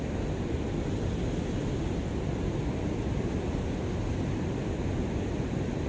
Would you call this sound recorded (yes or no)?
yes